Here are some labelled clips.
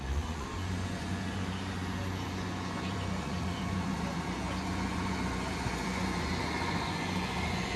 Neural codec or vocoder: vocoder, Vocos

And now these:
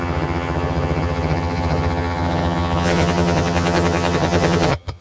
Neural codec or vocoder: vocoder, HiFi-GAN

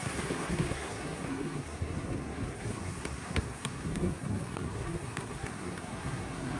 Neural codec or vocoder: codec, SNAC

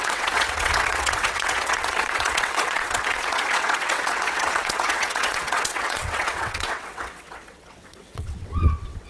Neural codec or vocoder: vocoder, WaveNeXt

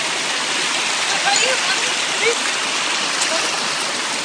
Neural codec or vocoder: none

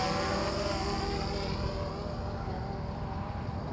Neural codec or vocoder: none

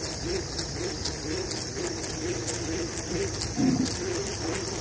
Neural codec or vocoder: none